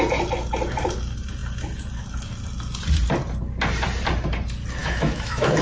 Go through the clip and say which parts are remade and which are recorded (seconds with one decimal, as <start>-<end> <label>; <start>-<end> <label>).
0.0-4.8 recorded; 4.8-5.6 remade